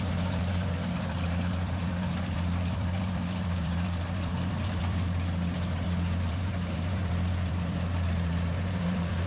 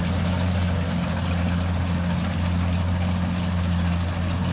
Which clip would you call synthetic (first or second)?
first